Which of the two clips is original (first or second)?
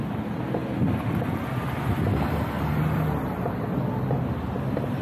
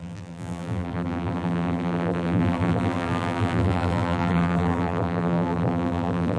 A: first